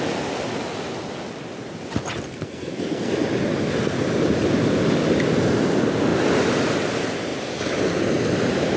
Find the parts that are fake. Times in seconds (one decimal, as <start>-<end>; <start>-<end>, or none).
2.3-3.1